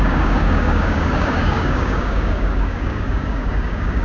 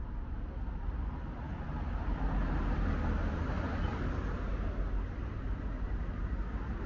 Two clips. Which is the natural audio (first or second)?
second